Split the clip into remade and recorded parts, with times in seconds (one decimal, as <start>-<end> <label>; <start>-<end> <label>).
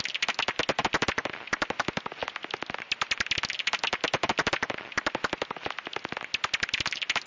0.0-7.3 recorded